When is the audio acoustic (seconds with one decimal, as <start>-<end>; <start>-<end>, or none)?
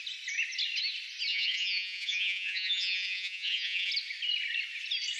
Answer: 0.0-1.3; 3.9-5.2